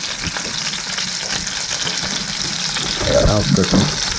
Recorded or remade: recorded